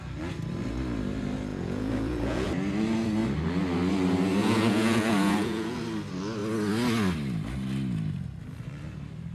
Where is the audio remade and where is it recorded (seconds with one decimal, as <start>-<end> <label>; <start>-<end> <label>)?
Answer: 0.0-1.5 recorded; 1.5-2.5 remade; 2.5-4.4 recorded; 4.4-5.8 remade; 5.8-9.3 recorded